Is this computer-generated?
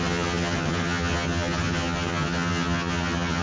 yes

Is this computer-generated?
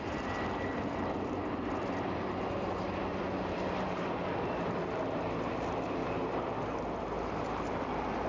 yes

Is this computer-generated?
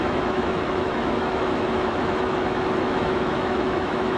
yes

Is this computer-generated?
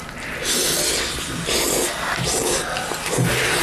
no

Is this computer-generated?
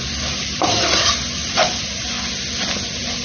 no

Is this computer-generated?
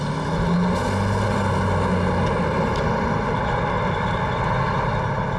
no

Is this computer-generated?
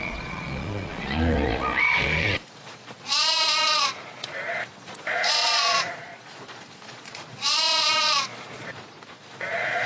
yes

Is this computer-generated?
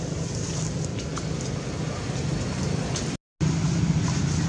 no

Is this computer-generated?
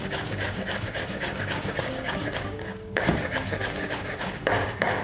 yes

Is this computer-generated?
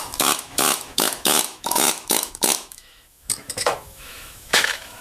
yes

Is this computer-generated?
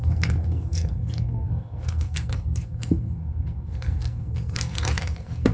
yes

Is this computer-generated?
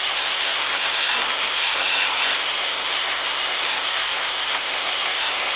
yes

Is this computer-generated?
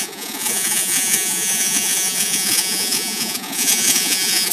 yes